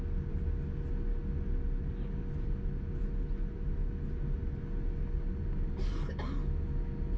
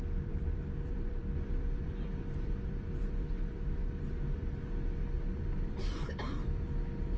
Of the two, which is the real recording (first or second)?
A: first